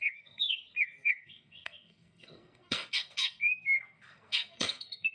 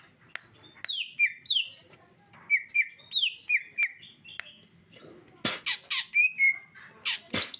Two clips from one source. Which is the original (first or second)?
second